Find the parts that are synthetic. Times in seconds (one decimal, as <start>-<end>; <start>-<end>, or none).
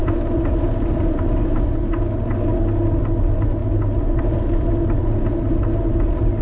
none